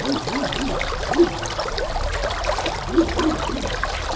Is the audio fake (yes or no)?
no